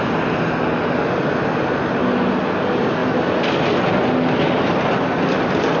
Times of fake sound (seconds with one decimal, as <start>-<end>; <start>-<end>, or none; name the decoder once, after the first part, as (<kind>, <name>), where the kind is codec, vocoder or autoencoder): none